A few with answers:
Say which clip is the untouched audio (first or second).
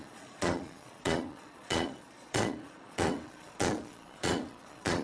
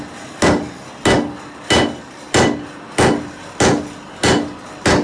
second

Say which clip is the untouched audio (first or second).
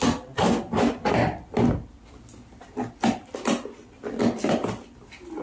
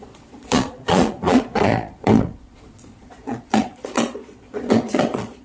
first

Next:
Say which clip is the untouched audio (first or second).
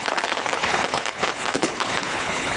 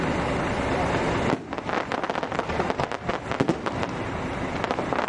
second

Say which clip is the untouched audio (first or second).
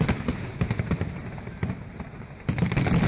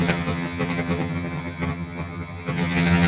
first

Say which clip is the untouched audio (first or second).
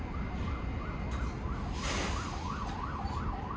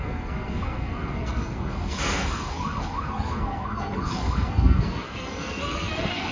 first